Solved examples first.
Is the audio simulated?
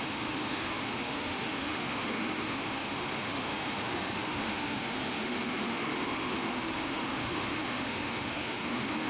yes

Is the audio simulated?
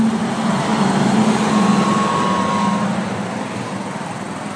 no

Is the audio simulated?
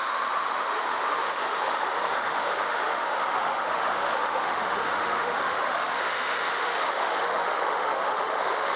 yes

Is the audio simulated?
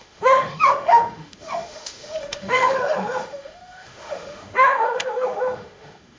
yes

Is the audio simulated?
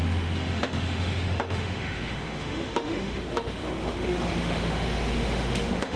yes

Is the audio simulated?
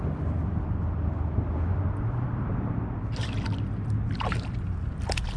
no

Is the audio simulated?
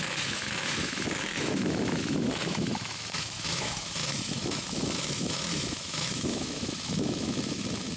yes